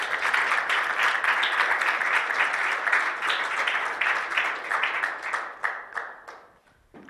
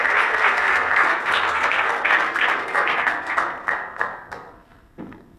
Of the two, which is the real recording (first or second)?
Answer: first